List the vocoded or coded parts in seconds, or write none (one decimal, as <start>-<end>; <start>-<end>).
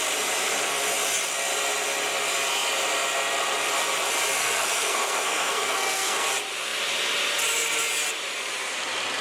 4.4-6.3